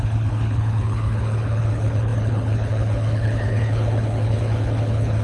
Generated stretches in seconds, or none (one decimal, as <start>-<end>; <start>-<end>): 0.0-5.2